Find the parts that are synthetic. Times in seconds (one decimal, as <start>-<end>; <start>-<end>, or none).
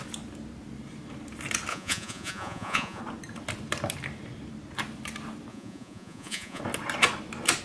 1.7-3.0; 5.5-6.6